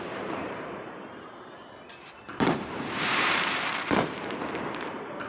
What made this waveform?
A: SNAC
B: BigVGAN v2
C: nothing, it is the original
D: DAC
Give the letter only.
B